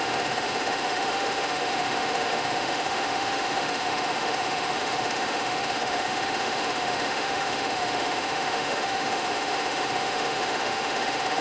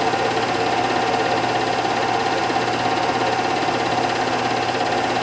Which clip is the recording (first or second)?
second